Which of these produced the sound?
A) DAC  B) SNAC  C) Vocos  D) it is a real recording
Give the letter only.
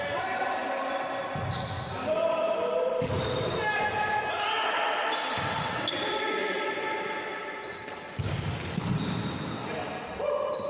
D